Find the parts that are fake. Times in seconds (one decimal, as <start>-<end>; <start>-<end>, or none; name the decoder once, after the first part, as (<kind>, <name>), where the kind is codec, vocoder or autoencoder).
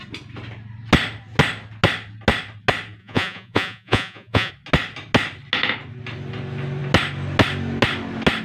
3.0-4.5 (vocoder, Vocos)